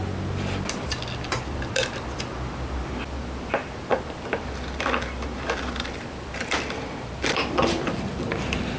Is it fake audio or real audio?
fake